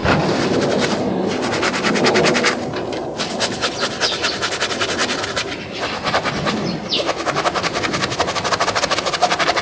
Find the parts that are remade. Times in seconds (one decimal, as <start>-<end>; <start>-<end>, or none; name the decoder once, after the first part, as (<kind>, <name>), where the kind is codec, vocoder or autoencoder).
none